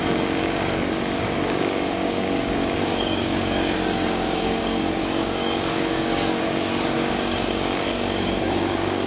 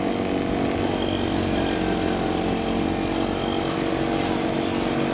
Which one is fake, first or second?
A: first